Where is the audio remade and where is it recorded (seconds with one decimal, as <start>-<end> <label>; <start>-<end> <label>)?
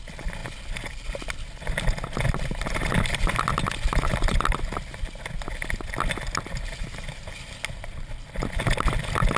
0.0-9.4 recorded